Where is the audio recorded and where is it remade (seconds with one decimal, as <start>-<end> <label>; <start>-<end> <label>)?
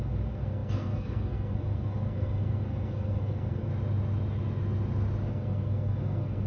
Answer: 0.0-3.7 remade; 3.7-5.3 recorded; 5.3-6.5 remade